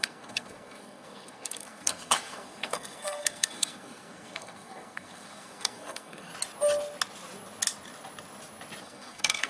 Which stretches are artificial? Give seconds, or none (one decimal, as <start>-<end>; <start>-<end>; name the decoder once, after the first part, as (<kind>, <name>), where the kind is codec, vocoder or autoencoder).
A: 0.0-6.3 (codec, SNAC); 8.8-9.5